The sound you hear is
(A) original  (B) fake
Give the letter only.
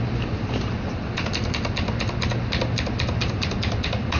A